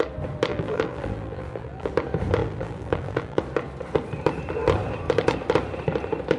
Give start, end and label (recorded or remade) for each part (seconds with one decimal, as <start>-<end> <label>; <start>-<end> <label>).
0.0-0.5 recorded; 0.5-1.9 remade; 1.9-2.4 recorded; 2.4-3.4 remade; 3.4-6.4 recorded